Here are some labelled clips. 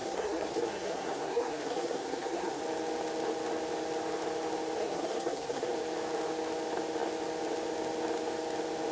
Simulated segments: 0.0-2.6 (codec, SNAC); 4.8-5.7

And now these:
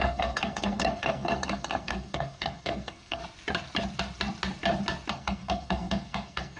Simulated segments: 0.0-3.2 (codec, SNAC); 5.1-6.6

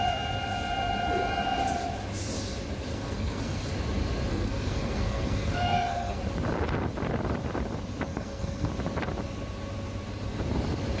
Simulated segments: 2.9-3.7 (codec, SNAC); 4.3-6.2; 8.1-8.7

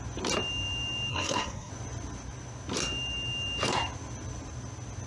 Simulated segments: 1.1-1.7 (codec, SNAC)

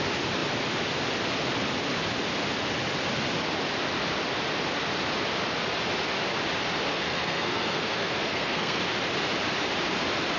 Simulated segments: 6.9-8.8 (codec, SNAC)